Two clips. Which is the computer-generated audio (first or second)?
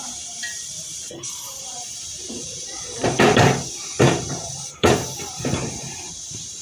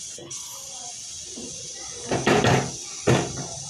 first